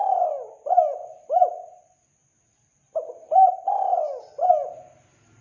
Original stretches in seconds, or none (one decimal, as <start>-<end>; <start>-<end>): 0.0-5.4